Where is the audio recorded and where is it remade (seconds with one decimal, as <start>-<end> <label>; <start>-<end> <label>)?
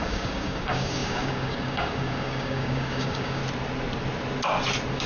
0.0-3.4 remade; 3.4-5.1 recorded